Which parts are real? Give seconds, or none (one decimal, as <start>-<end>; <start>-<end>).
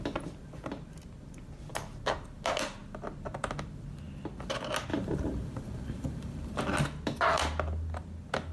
0.0-4.9; 6.6-8.5